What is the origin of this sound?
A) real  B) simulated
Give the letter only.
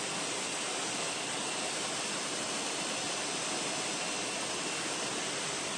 A